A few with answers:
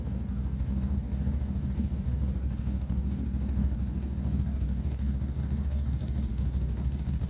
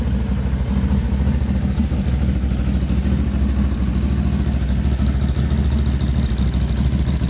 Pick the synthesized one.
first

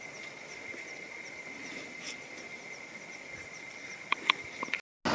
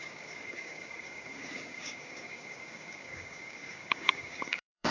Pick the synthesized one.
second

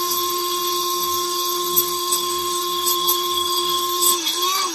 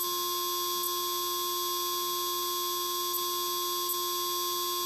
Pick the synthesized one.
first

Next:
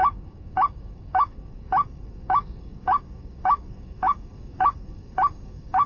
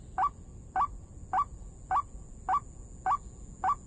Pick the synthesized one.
first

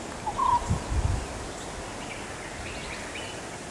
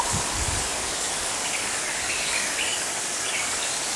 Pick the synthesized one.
second